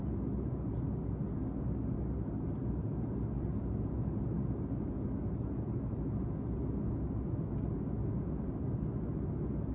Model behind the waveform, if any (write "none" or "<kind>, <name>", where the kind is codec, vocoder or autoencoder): none